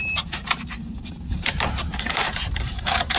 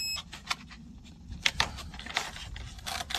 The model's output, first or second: first